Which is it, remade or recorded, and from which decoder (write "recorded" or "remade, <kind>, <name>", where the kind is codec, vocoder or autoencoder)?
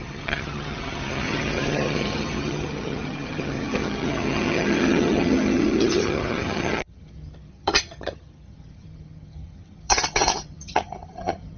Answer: remade, vocoder, HiFi-GAN